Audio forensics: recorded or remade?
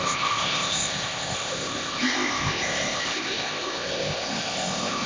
remade